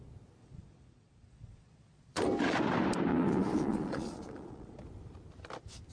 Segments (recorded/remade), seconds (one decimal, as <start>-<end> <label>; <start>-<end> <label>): 0.0-0.4 recorded; 0.4-2.2 remade; 2.2-3.1 recorded; 3.1-4.8 remade; 4.8-5.9 recorded